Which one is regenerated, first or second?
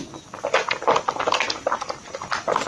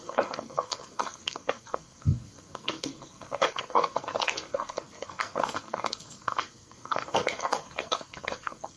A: second